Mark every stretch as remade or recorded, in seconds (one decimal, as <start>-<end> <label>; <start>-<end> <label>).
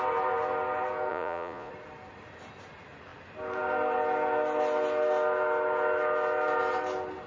0.0-1.1 recorded; 1.1-1.7 remade; 1.7-7.3 recorded